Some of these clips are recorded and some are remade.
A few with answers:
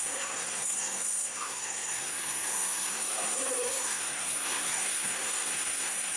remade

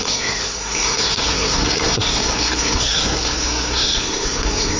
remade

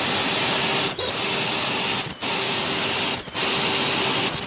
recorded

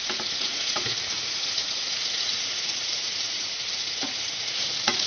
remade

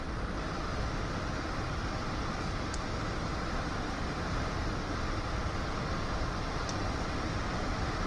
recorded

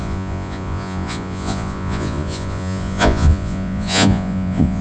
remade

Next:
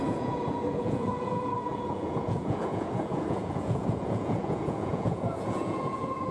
remade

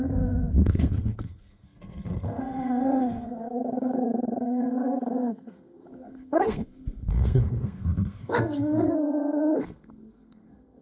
remade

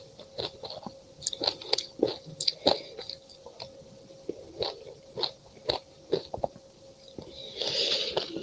recorded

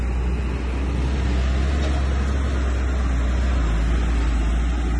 recorded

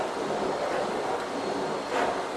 recorded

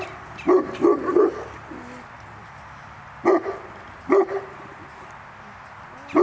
recorded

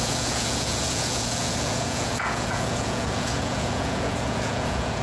remade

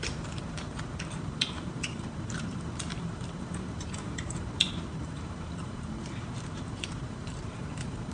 remade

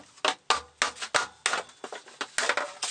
recorded